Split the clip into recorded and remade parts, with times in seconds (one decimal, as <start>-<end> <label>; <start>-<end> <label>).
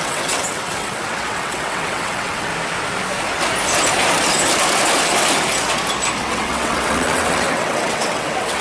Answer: 0.0-2.5 remade; 2.5-6.2 recorded; 6.2-8.6 remade